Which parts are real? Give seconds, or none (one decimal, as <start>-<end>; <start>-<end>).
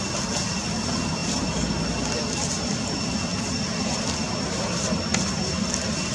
0.0-1.2; 1.8-3.3; 4.0-6.1